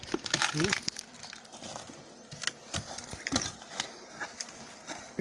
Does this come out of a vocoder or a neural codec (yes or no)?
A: no